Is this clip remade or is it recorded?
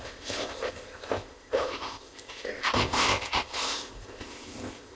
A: remade